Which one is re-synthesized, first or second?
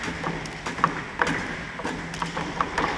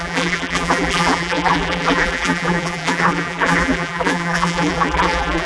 second